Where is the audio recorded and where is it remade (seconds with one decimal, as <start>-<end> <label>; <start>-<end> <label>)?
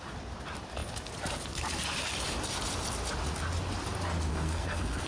0.0-4.3 recorded; 4.3-5.1 remade